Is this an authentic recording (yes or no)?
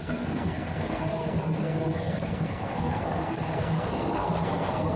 no